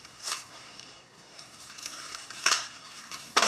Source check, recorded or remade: remade